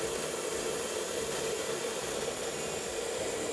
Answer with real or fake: fake